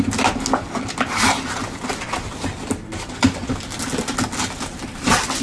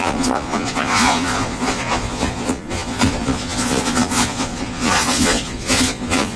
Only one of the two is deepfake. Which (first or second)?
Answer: second